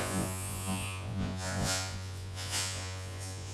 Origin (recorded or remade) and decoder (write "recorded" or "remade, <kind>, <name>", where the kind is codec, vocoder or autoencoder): remade, vocoder, Vocos